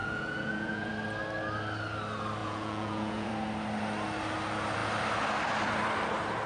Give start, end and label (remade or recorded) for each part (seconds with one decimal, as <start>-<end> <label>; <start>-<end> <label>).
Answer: 0.0-0.9 remade; 0.9-2.4 recorded; 2.4-3.3 remade; 3.3-6.5 recorded